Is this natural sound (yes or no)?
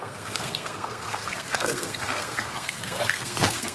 no